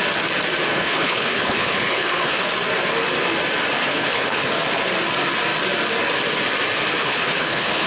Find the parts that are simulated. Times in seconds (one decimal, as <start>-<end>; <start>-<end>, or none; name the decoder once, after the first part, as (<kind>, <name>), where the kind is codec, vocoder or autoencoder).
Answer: 0.7-2.4 (codec, HILCodec); 3.8-4.5; 7.0-7.9